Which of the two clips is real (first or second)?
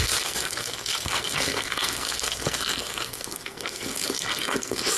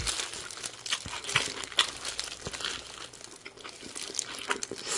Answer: second